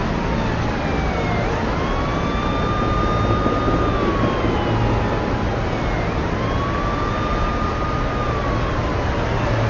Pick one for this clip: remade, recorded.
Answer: recorded